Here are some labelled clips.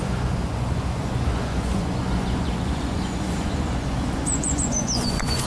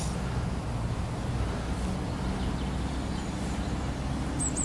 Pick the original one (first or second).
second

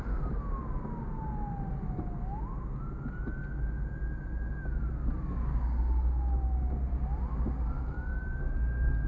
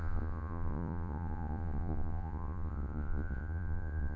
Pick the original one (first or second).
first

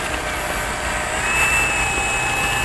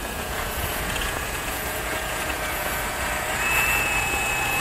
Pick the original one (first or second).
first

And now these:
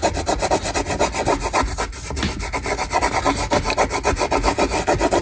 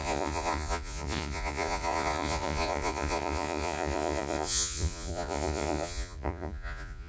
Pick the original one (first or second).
first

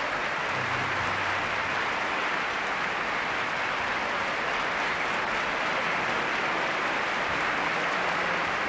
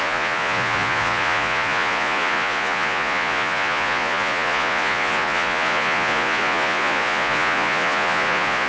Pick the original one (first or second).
first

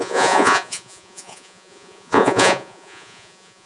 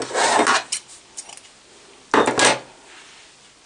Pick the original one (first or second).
second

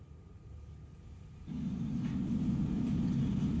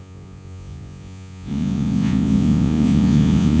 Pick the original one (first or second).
first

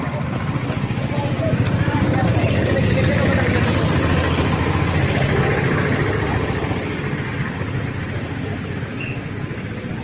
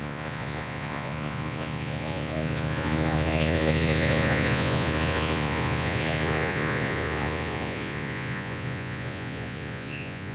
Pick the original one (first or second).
first